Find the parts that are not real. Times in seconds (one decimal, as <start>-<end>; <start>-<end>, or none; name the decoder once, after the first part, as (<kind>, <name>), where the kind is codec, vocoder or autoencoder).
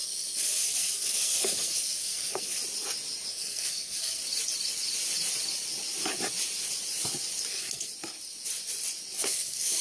0.0-2.6 (codec, SNAC); 3.3-4.2; 7.5-7.9; 9.2-9.8